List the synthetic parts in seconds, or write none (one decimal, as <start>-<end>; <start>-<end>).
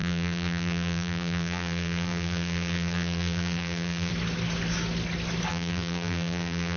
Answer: 0.0-4.1; 5.5-6.8